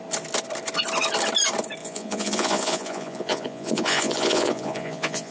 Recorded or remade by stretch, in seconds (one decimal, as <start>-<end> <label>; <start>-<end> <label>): 0.0-1.8 recorded; 1.8-5.3 remade